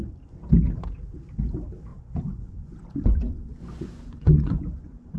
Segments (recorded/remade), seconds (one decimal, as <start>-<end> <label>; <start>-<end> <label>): 0.0-1.9 recorded; 1.9-5.2 remade